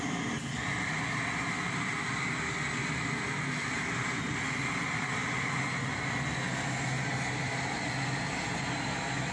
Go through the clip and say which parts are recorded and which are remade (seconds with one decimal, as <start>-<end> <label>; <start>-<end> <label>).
0.0-9.3 recorded